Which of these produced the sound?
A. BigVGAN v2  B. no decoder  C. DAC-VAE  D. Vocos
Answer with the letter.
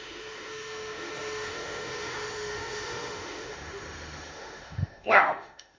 C